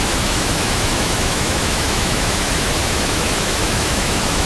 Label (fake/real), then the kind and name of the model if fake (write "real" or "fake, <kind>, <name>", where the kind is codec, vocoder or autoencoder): fake, autoencoder, DAC-VAE